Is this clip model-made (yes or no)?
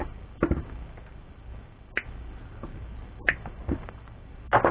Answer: no